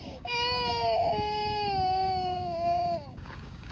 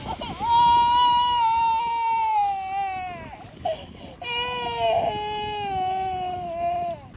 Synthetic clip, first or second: first